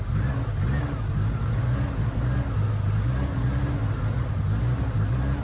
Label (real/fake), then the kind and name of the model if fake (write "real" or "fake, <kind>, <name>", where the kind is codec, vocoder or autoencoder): real